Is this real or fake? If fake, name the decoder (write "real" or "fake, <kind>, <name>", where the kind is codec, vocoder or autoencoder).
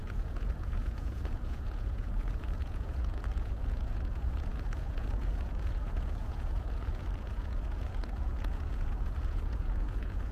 fake, vocoder, Vocos